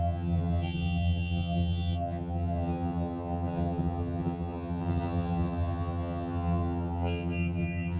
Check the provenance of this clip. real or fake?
fake